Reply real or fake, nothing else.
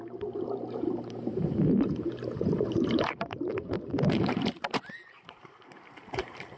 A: fake